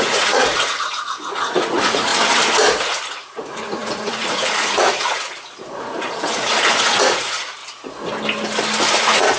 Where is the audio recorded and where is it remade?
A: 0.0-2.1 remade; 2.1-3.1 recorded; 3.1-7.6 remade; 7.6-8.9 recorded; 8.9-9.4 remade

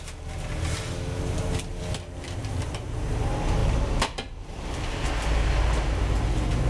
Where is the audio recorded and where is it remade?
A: 0.0-1.7 recorded; 1.7-2.4 remade; 2.4-3.6 recorded; 3.6-5.1 remade; 5.1-6.7 recorded

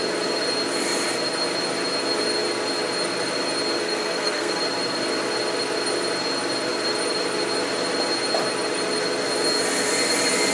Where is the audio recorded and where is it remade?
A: 0.0-3.8 recorded; 3.8-4.6 remade; 4.6-10.5 recorded

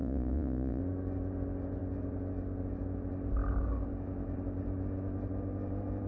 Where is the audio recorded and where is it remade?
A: 0.0-0.8 remade; 0.8-6.1 recorded

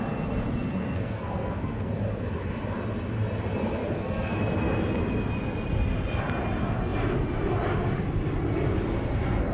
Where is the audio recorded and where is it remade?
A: 0.0-0.8 recorded; 0.8-1.9 remade; 1.9-3.8 recorded; 3.8-4.4 remade; 4.4-9.5 recorded

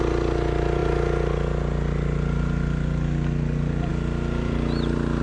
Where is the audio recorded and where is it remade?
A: 0.0-5.2 recorded

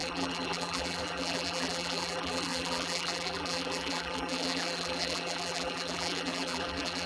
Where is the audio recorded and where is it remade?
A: 0.0-7.1 remade

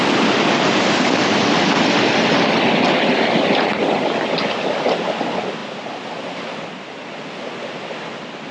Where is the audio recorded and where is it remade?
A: 0.0-8.5 recorded